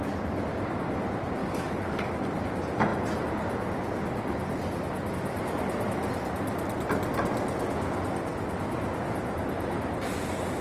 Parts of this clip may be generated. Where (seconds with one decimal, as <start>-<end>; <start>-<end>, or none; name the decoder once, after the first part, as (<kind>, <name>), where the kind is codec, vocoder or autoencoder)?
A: 1.4-2.1 (codec, DAC)